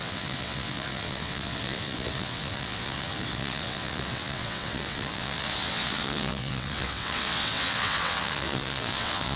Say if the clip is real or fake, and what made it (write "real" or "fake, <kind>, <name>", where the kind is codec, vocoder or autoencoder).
fake, vocoder, WaveNeXt